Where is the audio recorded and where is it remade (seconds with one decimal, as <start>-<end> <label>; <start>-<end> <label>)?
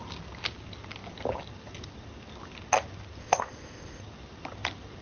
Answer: 0.0-3.2 recorded; 3.2-4.0 remade; 4.0-5.0 recorded